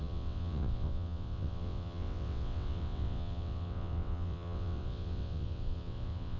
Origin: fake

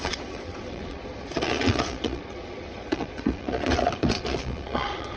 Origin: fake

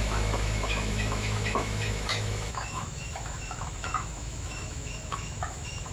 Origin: fake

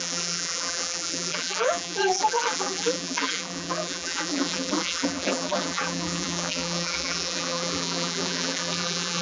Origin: fake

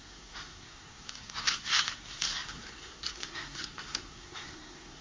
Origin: fake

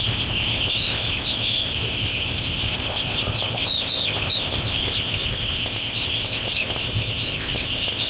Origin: fake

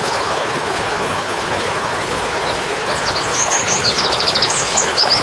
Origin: fake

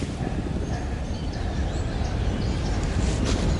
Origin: real